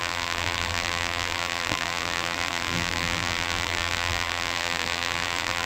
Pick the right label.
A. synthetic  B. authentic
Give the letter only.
A